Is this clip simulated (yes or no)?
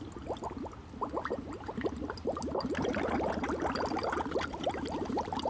no